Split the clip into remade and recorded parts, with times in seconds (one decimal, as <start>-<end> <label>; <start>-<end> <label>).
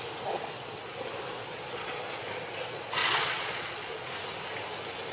0.0-1.4 recorded; 1.4-2.2 remade; 2.2-3.0 recorded; 3.0-4.1 remade; 4.1-5.1 recorded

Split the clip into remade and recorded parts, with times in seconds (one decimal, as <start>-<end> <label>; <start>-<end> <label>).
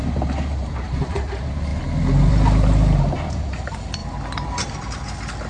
0.0-0.7 recorded; 0.7-1.7 remade; 1.7-2.3 recorded; 2.3-5.5 remade